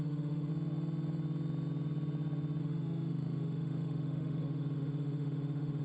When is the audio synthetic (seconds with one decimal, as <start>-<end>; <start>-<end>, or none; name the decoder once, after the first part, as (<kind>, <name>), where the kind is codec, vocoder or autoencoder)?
0.0-0.5 (autoencoder, DAC-VAE); 2.6-5.8